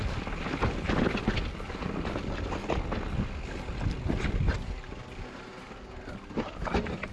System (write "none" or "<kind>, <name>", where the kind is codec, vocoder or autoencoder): none